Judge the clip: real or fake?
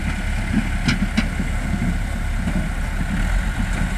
real